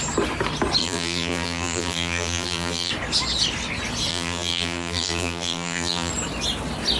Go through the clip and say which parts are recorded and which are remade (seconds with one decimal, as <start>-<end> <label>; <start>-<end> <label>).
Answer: 0.0-0.8 recorded; 0.8-2.9 remade; 2.9-4.1 recorded; 4.1-6.1 remade; 6.1-7.0 recorded